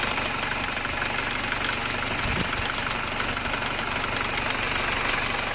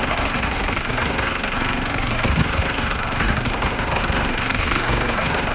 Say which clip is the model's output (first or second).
second